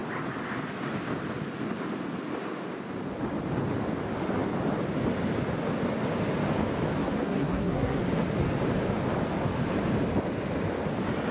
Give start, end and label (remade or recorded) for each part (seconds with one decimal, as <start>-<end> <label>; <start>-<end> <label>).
0.0-7.0 recorded; 7.0-8.0 remade; 8.0-11.3 recorded